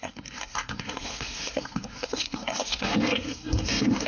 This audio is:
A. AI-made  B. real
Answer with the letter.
A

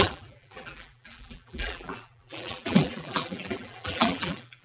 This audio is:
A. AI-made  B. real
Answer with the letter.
A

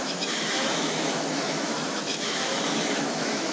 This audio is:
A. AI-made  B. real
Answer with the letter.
A